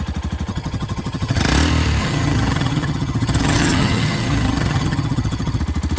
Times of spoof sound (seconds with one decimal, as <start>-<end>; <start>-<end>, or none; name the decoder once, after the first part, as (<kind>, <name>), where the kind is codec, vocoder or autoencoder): 0.5-1.4 (vocoder, HiFi-GAN); 2.0-5.6